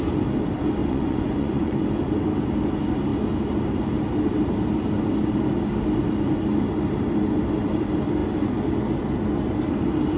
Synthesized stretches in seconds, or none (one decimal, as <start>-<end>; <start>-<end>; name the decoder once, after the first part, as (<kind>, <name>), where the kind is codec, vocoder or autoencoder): 0.8-1.8 (vocoder, Vocos)